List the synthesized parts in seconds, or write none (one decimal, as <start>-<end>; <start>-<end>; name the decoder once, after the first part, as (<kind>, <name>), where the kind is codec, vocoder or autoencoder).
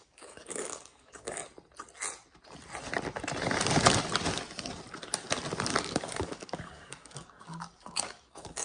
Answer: 0.0-1.4 (codec, DAC); 5.8-8.6